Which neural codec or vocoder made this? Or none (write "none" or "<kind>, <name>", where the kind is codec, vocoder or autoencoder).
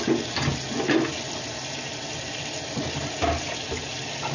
none